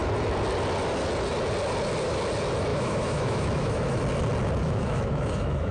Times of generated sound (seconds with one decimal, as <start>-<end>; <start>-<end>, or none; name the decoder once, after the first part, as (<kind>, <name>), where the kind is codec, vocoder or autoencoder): 2.7-4.0 (autoencoder, DAC-VAE); 4.6-5.7